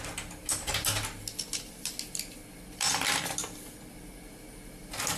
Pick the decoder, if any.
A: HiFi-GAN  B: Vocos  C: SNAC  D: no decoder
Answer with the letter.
D